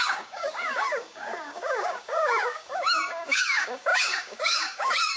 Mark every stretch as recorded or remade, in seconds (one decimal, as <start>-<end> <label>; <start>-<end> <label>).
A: 0.0-5.2 remade